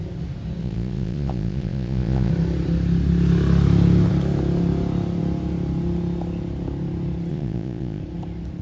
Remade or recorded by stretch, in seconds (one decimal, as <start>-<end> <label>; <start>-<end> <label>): 0.0-0.6 recorded; 0.6-2.3 remade; 2.3-7.3 recorded; 7.3-8.0 remade; 8.0-8.6 recorded